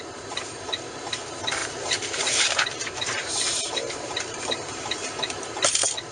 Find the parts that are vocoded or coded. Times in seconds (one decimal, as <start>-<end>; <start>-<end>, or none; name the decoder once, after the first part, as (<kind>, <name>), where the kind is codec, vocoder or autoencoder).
1.6-5.1 (vocoder, BigVGAN v2)